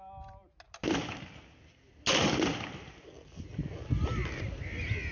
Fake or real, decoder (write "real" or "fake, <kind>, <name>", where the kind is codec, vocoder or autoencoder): real